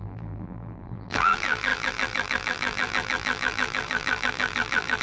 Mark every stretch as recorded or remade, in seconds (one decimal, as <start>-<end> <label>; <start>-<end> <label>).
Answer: 0.0-5.0 remade

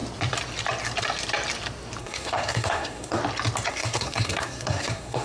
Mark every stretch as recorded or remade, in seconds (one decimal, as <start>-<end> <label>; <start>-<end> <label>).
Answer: 0.0-2.0 recorded; 2.0-3.2 remade; 3.2-3.7 recorded; 3.7-5.2 remade

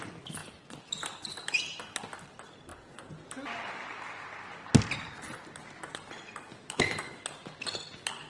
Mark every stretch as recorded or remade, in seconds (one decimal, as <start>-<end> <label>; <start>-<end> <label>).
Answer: 0.0-6.5 recorded; 6.5-7.2 remade; 7.2-8.3 recorded

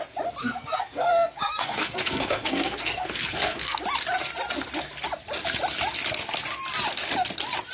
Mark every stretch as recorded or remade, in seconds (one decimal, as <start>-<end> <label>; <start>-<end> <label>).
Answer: 0.0-0.4 recorded; 0.4-3.8 remade; 3.8-7.7 recorded

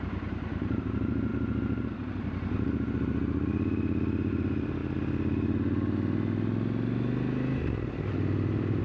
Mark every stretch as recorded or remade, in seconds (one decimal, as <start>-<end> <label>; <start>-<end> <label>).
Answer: 0.0-1.3 remade; 1.3-4.3 recorded; 4.3-4.8 remade; 4.8-8.8 recorded

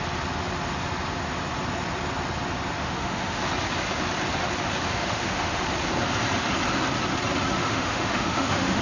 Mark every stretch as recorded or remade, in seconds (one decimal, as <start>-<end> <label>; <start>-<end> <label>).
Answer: 0.0-2.8 recorded; 2.8-3.4 remade; 3.4-4.9 recorded; 4.9-5.6 remade; 5.6-7.6 recorded; 7.6-8.8 remade

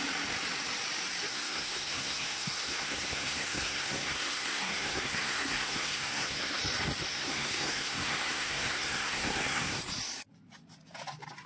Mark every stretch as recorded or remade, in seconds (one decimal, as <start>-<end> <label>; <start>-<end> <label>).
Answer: 0.0-1.3 recorded; 1.3-6.6 remade; 6.6-7.1 recorded; 7.1-9.8 remade; 9.8-11.5 recorded

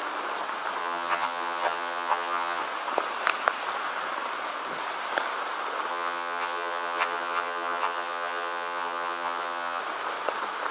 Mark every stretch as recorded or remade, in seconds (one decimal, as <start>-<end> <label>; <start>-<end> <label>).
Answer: 0.0-0.8 recorded; 0.8-2.6 remade; 2.6-5.9 recorded; 5.9-9.8 remade; 9.8-10.7 recorded